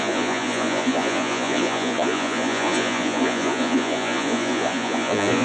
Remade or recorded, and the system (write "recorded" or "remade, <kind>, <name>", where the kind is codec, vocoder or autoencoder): remade, vocoder, Vocos